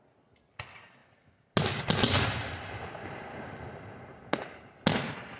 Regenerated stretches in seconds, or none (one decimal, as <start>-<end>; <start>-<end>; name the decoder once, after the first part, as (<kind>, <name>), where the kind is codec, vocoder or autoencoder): none